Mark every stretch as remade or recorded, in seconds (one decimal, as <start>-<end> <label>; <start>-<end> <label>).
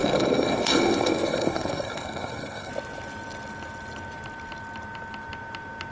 0.0-2.7 remade; 2.7-5.9 recorded